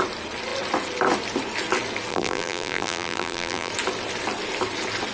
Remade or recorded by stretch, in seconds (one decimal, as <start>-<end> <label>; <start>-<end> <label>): 0.0-2.1 recorded; 2.1-3.7 remade; 3.7-5.1 recorded